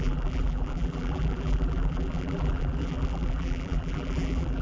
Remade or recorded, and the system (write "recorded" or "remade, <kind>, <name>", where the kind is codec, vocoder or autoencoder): remade, vocoder, BigVGAN v2